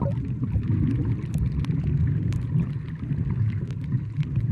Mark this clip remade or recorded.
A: recorded